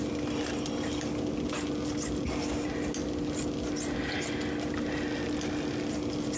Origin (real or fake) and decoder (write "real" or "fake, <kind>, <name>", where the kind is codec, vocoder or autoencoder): real